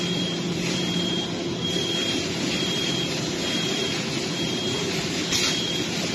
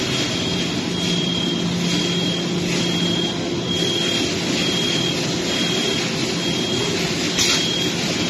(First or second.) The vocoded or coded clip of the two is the first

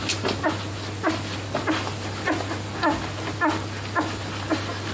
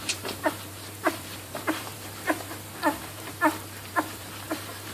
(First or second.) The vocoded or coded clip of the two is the second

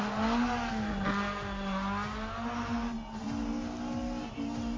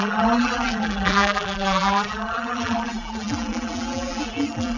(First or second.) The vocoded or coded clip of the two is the second